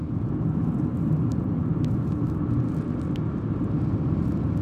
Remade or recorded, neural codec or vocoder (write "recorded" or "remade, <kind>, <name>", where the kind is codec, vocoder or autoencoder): recorded